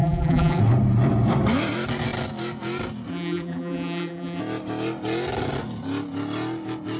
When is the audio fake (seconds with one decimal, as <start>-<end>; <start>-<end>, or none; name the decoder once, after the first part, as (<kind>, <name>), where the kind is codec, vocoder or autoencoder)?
0.0-0.6 (vocoder, BigVGAN v2); 3.1-4.4